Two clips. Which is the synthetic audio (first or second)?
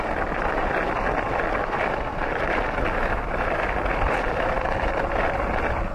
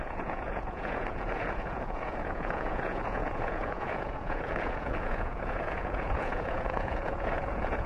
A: second